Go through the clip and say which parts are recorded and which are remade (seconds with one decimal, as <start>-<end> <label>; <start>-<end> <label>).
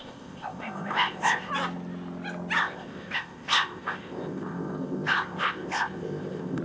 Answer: 0.0-1.5 remade; 1.5-2.6 recorded; 2.6-6.6 remade